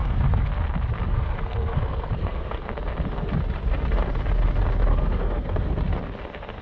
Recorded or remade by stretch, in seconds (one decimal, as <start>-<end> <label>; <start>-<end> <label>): 0.0-0.5 remade; 0.5-1.1 recorded; 1.1-2.7 remade; 2.7-4.9 recorded; 4.9-5.8 remade; 5.8-6.6 recorded